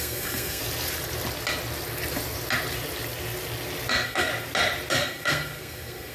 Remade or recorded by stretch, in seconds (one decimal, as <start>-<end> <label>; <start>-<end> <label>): 0.0-0.6 remade; 0.6-3.9 recorded; 3.9-4.3 remade; 4.3-4.9 recorded; 4.9-6.1 remade